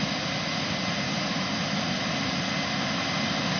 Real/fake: real